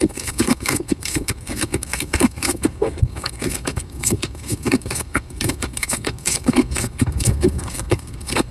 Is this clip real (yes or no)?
no